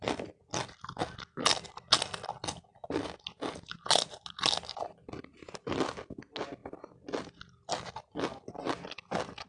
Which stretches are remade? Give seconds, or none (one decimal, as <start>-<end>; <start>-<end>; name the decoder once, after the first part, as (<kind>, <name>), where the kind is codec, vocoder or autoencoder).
none